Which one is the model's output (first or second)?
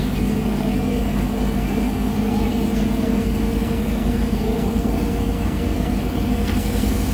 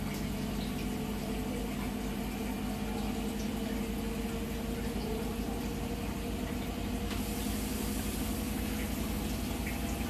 first